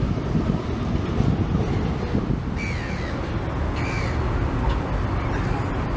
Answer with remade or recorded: recorded